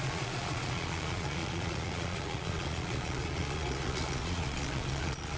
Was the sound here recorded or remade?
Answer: remade